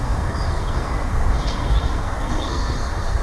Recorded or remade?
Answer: remade